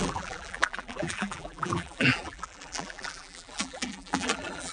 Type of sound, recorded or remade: remade